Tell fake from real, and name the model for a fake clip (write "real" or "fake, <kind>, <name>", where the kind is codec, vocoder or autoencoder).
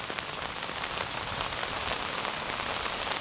real